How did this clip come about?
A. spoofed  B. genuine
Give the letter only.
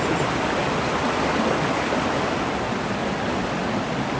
B